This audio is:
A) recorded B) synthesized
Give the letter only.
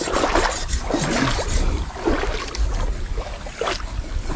A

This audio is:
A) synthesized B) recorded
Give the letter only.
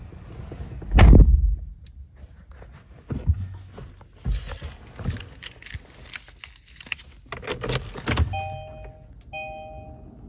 B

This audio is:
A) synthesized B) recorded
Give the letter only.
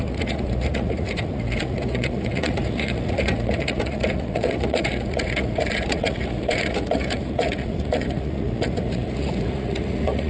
A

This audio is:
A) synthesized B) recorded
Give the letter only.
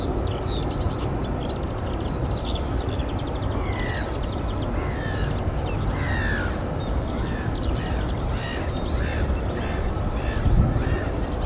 B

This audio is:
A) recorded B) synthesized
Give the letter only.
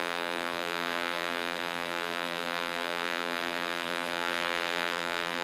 B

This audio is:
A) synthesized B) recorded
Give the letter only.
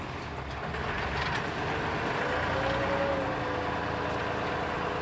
B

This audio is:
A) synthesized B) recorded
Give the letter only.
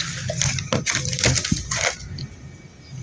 B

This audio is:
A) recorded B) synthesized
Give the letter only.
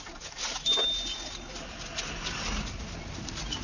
A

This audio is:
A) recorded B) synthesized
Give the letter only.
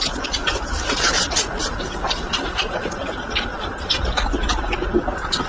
B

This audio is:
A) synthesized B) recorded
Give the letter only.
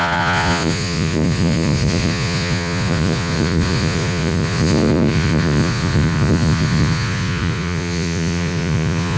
A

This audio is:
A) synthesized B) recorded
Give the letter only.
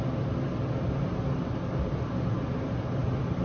B